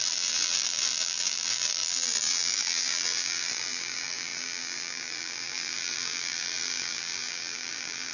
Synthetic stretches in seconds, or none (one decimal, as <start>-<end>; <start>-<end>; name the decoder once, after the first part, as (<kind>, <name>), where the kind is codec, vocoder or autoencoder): 0.0-8.1 (vocoder, BigVGAN v2)